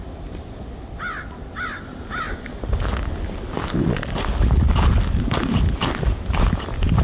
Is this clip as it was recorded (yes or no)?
yes